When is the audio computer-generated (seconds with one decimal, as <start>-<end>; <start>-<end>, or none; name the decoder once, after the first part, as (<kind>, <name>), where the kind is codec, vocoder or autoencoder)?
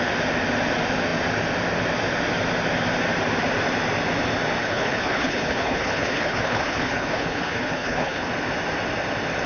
4.6-8.3 (codec, HILCodec)